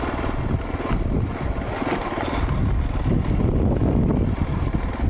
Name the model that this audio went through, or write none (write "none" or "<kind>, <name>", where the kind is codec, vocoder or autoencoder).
none